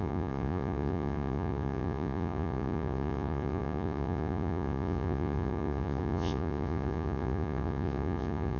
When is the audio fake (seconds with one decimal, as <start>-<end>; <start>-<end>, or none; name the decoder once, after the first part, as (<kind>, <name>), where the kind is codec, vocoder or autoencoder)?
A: 0.0-8.6 (vocoder, Vocos)